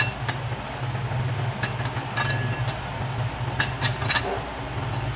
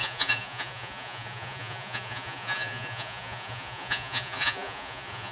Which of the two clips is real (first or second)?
first